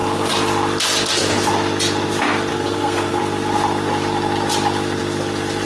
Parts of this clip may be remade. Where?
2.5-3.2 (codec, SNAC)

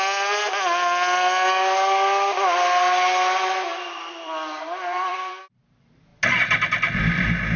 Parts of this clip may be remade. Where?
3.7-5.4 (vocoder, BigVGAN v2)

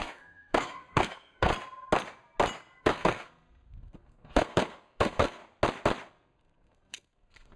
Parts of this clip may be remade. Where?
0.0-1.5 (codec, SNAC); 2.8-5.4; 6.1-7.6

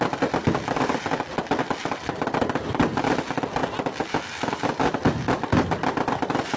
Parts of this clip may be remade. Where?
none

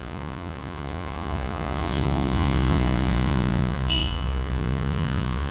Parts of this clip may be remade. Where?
0.0-5.5 (vocoder, Vocos)

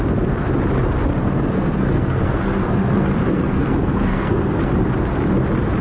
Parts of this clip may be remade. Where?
1.2-4.7 (codec, SNAC)

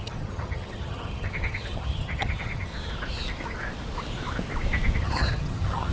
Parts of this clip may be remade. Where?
0.0-2.7 (vocoder, HiFi-GAN); 5.0-5.9

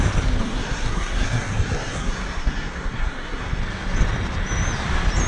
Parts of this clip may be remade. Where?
0.4-3.6 (codec, SNAC)